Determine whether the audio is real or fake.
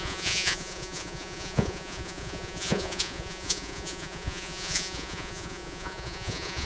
fake